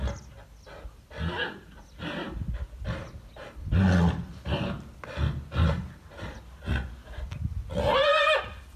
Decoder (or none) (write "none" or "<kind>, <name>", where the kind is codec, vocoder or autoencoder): none